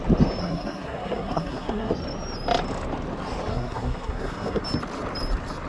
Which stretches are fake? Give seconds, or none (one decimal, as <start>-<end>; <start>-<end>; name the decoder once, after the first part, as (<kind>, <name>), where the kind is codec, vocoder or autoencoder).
0.4-1.9 (codec, SNAC); 3.5-4.6